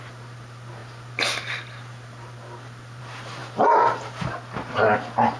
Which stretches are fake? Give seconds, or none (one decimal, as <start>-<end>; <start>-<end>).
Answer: none